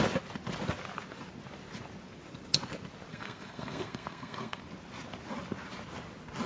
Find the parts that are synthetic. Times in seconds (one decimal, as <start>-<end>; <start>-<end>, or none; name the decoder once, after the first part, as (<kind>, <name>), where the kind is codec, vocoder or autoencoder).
3.1-4.6 (codec, SNAC)